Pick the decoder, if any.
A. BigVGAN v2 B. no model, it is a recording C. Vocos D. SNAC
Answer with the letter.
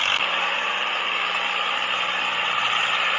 B